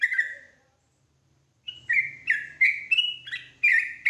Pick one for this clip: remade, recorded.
recorded